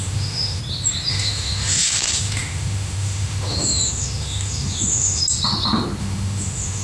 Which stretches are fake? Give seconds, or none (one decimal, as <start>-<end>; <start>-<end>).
0.0-0.6; 1.1-5.2; 6.0-6.8